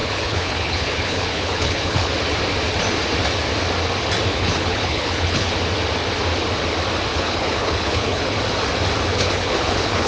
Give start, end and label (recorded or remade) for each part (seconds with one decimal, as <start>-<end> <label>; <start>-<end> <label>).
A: 0.0-2.1 remade; 2.1-4.3 recorded; 4.3-5.5 remade; 5.5-7.1 recorded; 7.1-8.4 remade; 8.4-9.1 recorded; 9.1-10.1 remade